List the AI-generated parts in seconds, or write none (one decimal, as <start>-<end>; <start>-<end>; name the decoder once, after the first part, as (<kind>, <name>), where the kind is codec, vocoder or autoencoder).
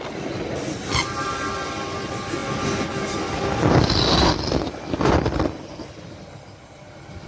none